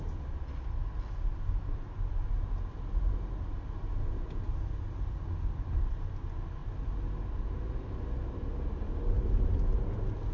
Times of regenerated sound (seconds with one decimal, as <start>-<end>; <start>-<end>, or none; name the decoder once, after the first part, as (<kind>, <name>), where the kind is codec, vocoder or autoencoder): none